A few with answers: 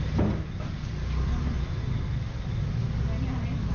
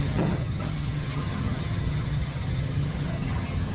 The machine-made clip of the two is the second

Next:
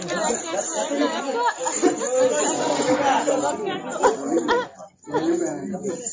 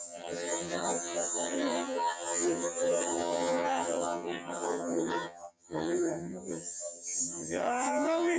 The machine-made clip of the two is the second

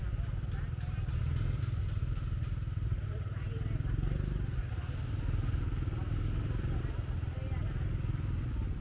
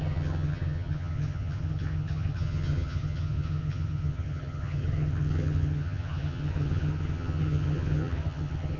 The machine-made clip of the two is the second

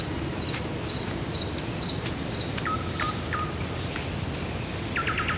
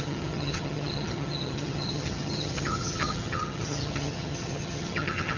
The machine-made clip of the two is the second